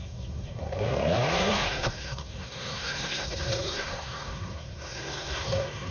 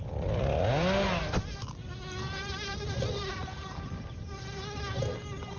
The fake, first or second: first